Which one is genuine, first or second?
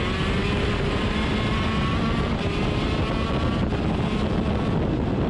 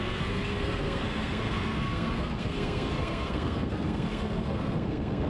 first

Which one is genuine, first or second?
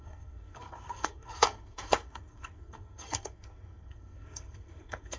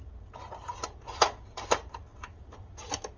second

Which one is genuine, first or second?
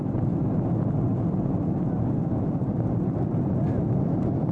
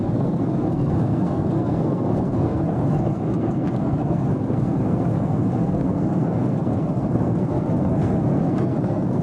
first